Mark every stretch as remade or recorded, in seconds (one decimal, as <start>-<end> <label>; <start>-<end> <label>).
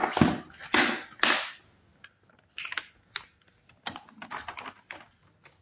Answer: 0.0-5.6 recorded